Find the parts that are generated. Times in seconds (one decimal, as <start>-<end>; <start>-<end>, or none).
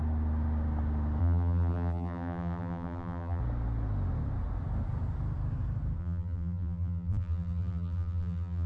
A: 1.2-3.4; 6.0-8.7